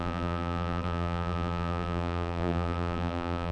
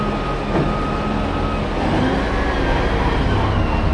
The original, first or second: second